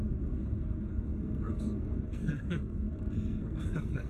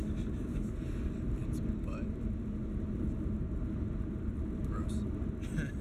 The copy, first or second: first